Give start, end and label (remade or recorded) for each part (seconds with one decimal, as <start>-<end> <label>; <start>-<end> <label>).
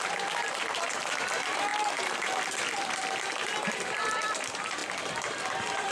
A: 0.0-5.9 recorded